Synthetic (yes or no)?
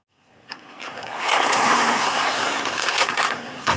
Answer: yes